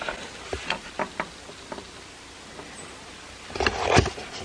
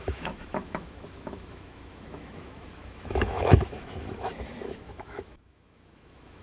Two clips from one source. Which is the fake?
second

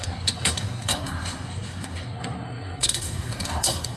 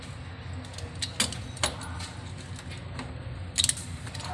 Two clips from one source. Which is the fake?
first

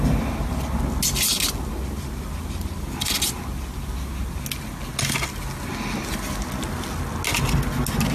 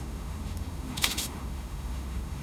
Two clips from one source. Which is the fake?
second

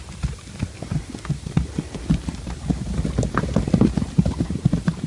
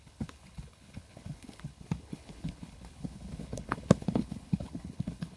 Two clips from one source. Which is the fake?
second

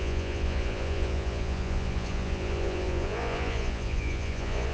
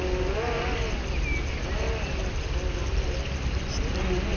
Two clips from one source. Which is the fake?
first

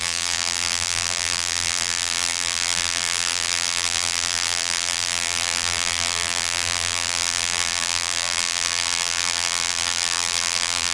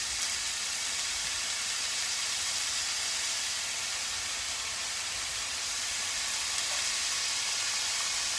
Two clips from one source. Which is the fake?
first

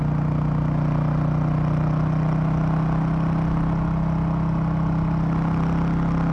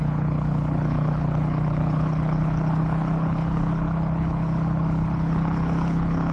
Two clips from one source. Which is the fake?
second